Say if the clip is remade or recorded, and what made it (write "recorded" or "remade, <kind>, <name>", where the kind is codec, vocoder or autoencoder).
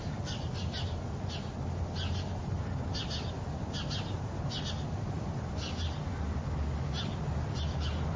recorded